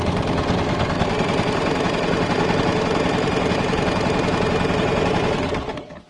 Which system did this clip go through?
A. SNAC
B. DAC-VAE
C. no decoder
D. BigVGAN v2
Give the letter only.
C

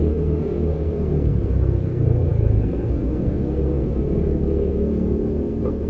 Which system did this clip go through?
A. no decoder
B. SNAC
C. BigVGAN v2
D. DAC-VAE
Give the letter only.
B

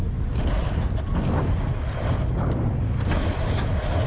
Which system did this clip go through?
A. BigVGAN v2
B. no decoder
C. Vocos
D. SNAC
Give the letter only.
B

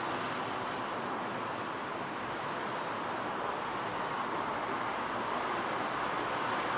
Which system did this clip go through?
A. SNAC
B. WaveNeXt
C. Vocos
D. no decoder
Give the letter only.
D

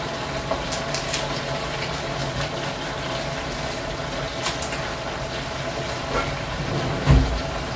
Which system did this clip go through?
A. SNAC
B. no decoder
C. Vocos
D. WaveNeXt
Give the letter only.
B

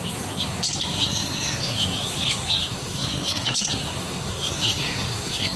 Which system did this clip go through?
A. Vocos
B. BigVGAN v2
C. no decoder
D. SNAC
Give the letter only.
D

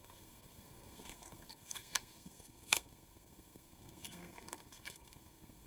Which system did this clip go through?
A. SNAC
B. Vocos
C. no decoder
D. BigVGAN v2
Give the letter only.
A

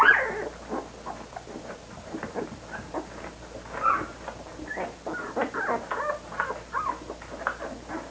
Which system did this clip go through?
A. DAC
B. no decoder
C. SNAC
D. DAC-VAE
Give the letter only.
B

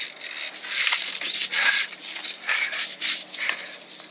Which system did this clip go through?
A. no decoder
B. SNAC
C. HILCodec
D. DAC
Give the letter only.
A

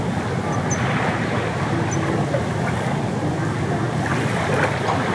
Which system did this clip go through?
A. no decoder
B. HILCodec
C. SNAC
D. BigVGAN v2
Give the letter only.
A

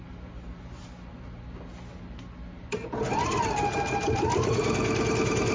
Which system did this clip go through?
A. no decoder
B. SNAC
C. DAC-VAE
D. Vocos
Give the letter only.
A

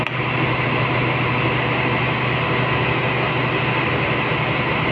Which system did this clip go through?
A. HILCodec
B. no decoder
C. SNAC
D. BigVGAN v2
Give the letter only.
B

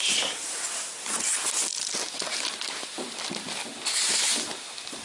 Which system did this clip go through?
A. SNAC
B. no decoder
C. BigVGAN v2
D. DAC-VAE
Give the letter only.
B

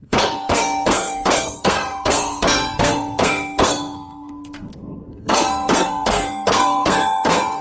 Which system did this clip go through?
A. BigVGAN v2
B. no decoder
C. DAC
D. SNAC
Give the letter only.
D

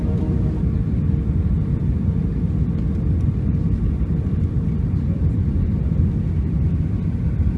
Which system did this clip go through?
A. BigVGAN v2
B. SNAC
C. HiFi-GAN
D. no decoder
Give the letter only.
D